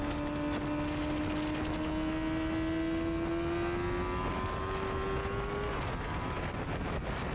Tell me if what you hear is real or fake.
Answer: real